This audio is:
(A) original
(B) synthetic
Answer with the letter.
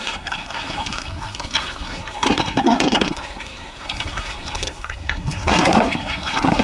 B